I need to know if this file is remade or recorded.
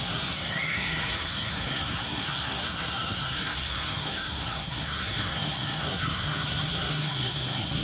remade